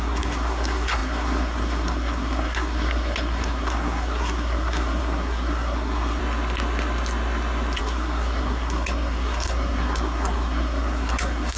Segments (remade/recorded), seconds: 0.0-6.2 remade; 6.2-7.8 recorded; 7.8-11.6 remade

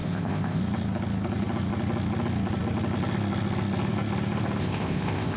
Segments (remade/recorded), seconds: 0.0-0.6 remade; 0.6-4.6 recorded; 4.6-5.4 remade